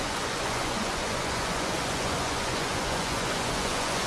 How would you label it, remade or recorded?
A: remade